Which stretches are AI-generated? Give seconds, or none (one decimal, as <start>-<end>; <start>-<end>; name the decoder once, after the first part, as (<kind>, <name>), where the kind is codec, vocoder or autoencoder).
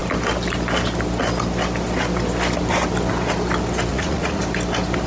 3.9-4.4 (vocoder, Vocos)